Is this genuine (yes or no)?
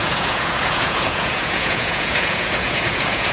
no